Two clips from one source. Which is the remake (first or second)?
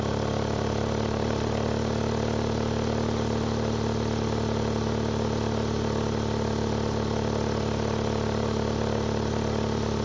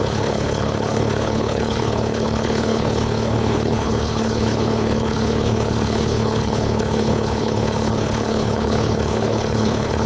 second